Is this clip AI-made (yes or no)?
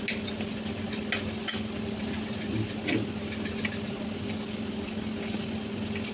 no